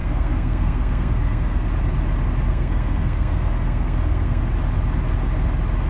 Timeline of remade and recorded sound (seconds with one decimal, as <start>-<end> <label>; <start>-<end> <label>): 0.0-1.7 remade; 1.7-2.5 recorded; 2.5-4.4 remade; 4.4-5.9 recorded

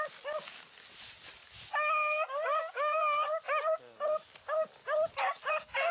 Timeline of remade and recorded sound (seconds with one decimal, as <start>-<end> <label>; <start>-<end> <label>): 0.0-5.9 recorded

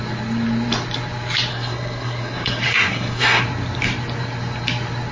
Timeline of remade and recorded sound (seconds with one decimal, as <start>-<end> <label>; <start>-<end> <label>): 0.0-1.5 recorded; 1.5-3.4 remade; 3.4-5.1 recorded

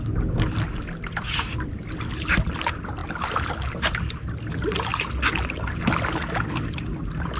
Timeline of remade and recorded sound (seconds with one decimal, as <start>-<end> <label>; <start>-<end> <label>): 0.0-7.4 recorded